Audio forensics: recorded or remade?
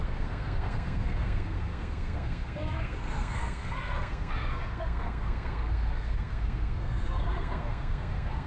remade